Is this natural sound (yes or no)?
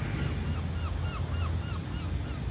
yes